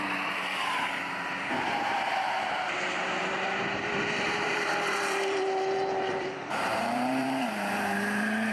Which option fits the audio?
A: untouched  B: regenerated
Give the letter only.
B